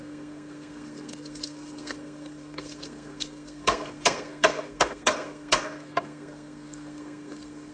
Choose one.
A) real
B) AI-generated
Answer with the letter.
B